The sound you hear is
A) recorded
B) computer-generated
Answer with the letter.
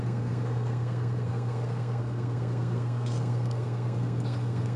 B